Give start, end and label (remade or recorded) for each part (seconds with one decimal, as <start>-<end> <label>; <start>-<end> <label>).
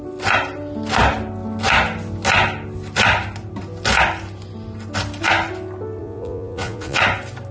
0.0-6.0 recorded; 6.0-7.0 remade; 7.0-7.5 recorded